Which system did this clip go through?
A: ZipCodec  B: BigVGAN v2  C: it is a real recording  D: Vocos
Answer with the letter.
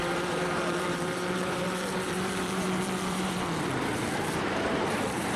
B